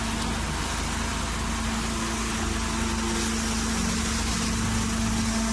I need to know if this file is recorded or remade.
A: recorded